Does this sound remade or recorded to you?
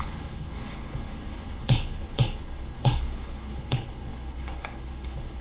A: remade